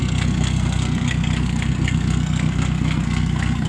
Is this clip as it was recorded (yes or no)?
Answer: no